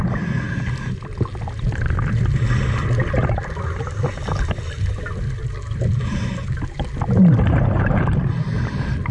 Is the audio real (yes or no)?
yes